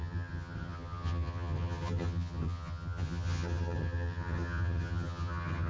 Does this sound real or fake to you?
fake